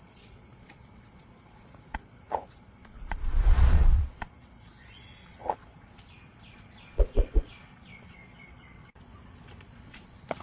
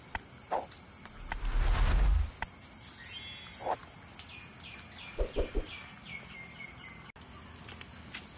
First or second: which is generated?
first